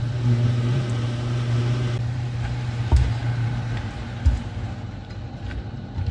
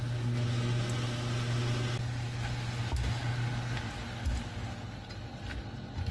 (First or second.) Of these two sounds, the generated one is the first